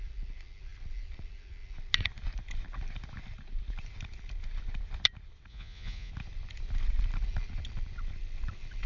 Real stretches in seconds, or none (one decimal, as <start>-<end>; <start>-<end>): 0.0-5.5; 6.1-8.9